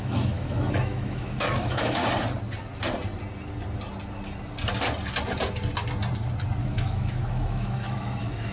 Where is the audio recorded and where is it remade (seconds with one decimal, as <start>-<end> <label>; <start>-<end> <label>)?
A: 0.0-2.0 remade; 2.0-6.6 recorded; 6.6-8.5 remade